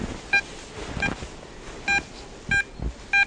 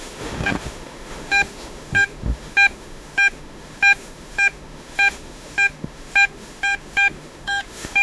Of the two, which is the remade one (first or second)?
second